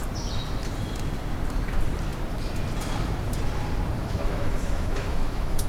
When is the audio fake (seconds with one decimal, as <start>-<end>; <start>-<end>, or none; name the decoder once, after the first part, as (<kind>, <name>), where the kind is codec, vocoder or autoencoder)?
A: 4.0-5.7 (autoencoder, DAC-VAE)